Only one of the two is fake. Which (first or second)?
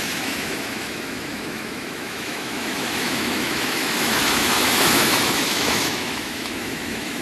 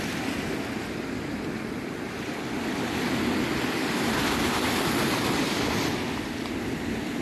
first